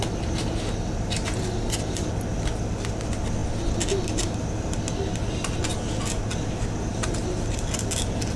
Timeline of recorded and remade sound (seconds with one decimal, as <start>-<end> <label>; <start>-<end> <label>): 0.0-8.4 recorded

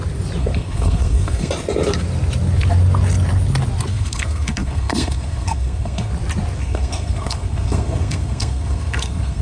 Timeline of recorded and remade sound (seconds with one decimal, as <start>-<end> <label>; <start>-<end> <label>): 0.0-0.4 recorded; 0.4-1.5 remade; 1.5-3.9 recorded; 3.9-6.1 remade; 6.1-6.6 recorded; 6.6-9.4 remade

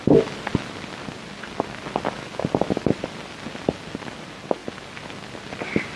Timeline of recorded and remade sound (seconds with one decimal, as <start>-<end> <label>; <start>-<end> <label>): 0.0-6.0 recorded